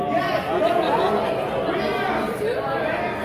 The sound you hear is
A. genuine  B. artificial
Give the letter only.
A